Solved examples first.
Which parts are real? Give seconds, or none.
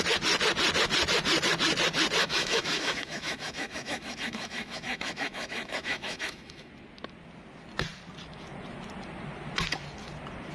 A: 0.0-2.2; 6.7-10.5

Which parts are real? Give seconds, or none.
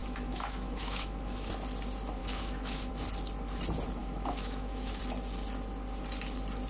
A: 1.5-2.2; 2.9-4.0; 5.0-6.7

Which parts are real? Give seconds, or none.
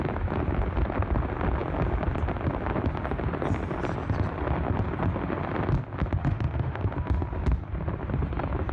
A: 0.0-6.2; 6.8-8.7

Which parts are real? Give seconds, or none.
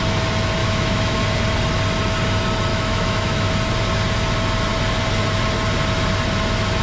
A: 0.0-0.6; 1.2-2.7; 3.5-6.8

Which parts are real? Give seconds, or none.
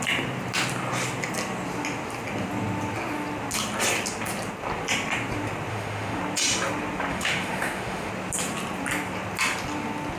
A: 0.0-5.7; 6.2-7.1; 8.1-10.2